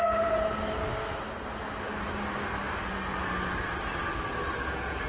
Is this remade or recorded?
recorded